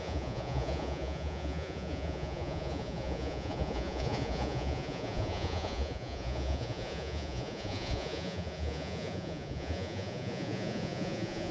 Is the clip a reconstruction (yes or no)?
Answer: yes